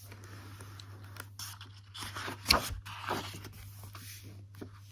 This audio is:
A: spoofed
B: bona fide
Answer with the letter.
B